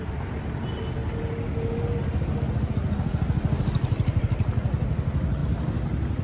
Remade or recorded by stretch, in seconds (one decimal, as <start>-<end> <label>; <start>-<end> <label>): 0.0-6.2 recorded